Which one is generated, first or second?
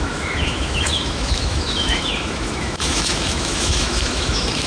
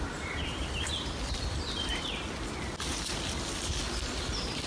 first